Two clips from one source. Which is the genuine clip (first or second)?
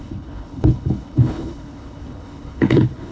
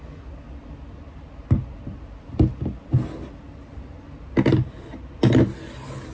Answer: second